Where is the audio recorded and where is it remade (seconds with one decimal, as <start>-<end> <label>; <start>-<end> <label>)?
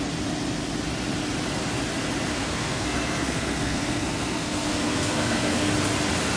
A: 0.0-2.3 recorded; 2.3-5.7 remade; 5.7-6.4 recorded